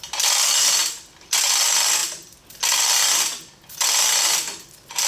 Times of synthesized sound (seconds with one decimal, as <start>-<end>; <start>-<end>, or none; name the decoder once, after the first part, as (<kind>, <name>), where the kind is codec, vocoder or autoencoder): none